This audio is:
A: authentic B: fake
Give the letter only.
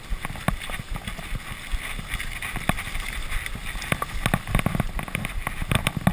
A